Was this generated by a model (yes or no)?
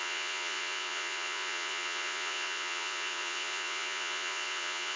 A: yes